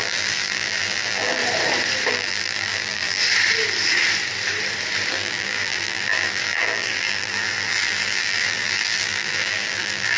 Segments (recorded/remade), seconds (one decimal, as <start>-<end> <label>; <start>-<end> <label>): 0.0-1.4 remade; 1.4-2.1 recorded; 2.1-3.2 remade; 3.2-5.1 recorded; 5.1-10.2 remade